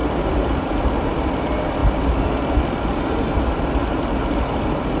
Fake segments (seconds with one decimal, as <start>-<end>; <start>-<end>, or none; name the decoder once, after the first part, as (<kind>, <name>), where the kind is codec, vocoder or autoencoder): 0.0-0.7 (vocoder, BigVGAN v2)